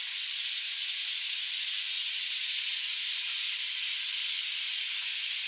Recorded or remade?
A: recorded